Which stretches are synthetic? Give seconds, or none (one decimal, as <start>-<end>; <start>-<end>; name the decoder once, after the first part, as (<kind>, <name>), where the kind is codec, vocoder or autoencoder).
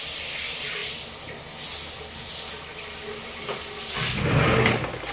none